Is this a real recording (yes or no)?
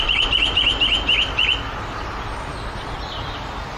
yes